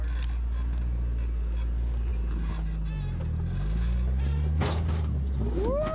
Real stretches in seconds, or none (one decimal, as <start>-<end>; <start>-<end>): 0.0-5.9